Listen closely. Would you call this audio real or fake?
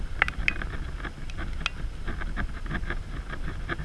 real